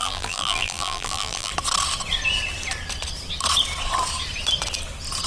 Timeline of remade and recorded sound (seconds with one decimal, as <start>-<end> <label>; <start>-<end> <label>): 0.0-1.5 remade; 1.5-5.3 recorded